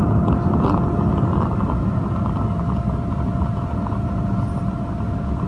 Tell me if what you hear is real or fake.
real